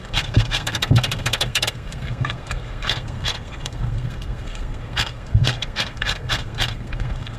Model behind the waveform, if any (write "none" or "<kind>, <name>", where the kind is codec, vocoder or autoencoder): codec, SNAC